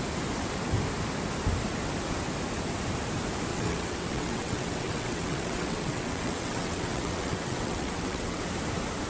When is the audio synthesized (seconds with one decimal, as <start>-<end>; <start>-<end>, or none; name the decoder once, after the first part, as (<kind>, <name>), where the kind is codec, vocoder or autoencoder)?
3.5-8.4 (vocoder, WaveNeXt)